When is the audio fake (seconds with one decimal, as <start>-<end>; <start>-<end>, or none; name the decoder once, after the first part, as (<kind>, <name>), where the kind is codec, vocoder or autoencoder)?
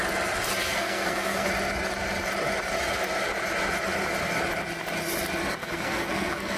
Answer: 0.7-1.5 (codec, SNAC); 5.6-6.6